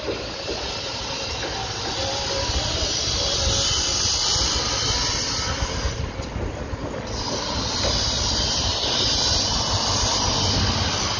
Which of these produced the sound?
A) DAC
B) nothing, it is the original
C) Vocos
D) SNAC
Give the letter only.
B